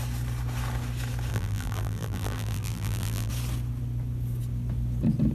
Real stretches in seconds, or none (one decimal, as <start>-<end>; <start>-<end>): 0.0-1.3; 3.3-5.3